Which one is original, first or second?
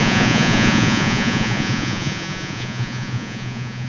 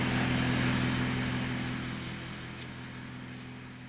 second